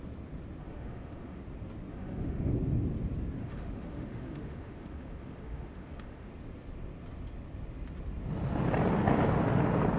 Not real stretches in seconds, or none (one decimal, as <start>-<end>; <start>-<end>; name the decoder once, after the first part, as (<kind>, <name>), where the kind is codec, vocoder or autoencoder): 0.6-1.4 (autoencoder, DAC-VAE); 1.9-2.5; 3.4-6.3